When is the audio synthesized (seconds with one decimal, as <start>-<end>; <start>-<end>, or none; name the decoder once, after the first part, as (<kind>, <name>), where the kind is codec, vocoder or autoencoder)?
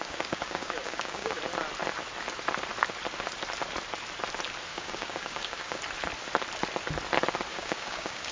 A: 0.0-1.4 (codec, DAC); 4.7-5.8; 7.5-8.3